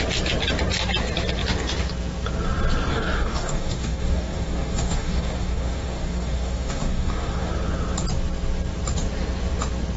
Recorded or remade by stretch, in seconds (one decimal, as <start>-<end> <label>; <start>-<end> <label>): 0.0-2.9 recorded; 2.9-7.5 remade; 7.5-10.0 recorded